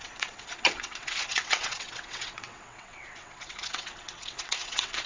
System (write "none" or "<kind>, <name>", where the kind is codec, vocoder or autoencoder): vocoder, WaveNeXt